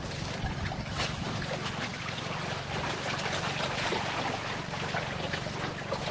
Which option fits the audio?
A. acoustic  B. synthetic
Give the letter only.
A